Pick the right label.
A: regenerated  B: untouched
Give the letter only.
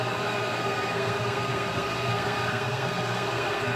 A